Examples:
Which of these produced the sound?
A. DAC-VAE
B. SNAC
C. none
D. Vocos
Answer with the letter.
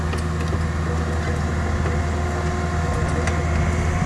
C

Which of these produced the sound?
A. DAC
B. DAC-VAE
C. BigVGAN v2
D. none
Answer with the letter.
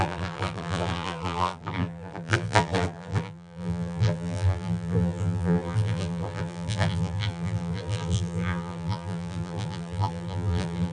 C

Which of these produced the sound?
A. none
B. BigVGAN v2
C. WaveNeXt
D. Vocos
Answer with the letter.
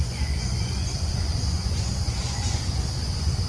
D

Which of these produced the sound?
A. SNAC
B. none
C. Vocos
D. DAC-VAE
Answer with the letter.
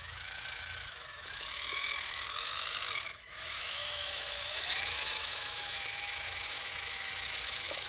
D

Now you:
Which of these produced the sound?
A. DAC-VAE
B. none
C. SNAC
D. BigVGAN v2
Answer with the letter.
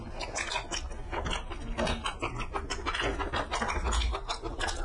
B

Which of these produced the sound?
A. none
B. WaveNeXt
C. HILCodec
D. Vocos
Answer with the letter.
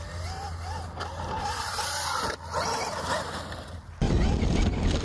A